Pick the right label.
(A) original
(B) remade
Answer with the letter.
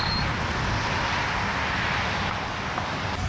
A